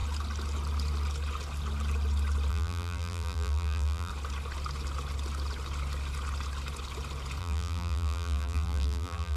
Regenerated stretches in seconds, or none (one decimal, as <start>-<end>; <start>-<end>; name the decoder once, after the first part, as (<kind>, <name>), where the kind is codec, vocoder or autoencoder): 2.5-4.1 (vocoder, BigVGAN v2); 7.4-9.4